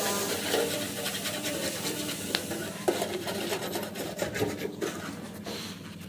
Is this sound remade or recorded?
remade